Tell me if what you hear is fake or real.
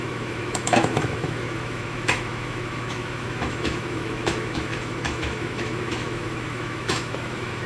fake